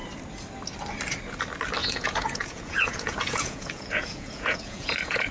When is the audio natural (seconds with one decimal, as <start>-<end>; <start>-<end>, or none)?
0.0-1.8